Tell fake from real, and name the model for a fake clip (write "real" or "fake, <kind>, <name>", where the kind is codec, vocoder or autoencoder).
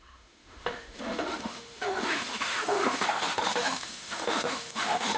fake, autoencoder, DAC-VAE